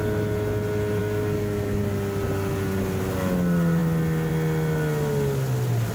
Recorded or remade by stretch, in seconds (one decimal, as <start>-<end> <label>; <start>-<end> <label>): 0.0-1.0 recorded; 1.0-1.8 remade; 1.8-5.9 recorded